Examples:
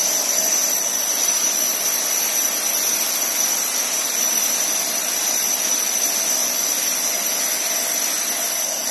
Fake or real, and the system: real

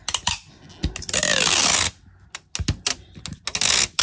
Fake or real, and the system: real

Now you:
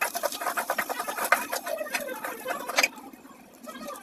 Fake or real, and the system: real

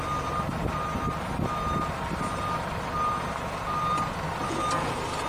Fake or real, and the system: real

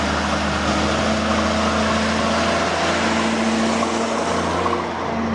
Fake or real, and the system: real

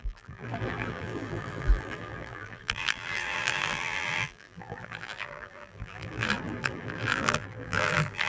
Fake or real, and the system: fake, vocoder, BigVGAN v2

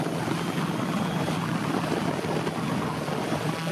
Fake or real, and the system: fake, vocoder, BigVGAN v2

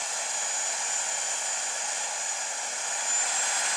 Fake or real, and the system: real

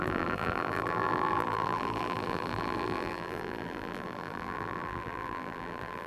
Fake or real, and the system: fake, vocoder, BigVGAN v2